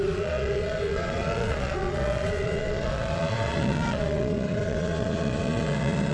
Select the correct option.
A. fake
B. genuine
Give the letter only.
A